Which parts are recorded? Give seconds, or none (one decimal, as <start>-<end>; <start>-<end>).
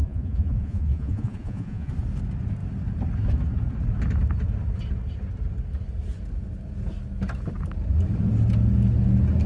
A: 1.9-9.5